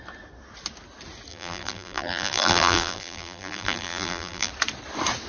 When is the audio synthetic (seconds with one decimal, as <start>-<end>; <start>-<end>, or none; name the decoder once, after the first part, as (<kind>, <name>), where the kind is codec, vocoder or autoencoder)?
1.3-4.5 (vocoder, BigVGAN v2)